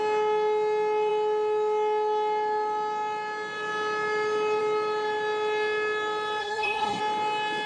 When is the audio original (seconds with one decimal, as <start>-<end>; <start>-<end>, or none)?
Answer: 0.0-6.4; 7.0-7.7